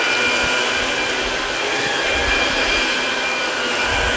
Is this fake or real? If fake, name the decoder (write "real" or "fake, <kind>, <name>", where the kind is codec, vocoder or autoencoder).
fake, vocoder, BigVGAN v2